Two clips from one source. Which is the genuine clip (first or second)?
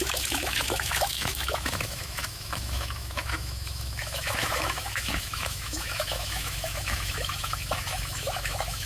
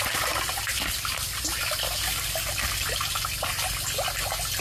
second